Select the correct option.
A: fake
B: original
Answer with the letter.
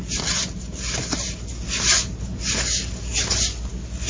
B